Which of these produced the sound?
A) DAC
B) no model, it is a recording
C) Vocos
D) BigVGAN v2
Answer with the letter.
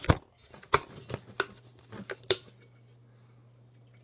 B